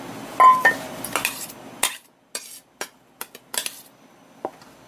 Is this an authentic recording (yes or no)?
yes